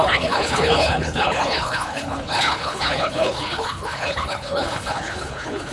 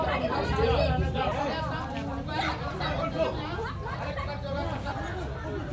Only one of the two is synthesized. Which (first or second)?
first